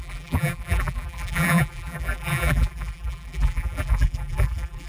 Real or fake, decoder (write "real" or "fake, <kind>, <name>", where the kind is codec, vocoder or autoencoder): fake, vocoder, BigVGAN v2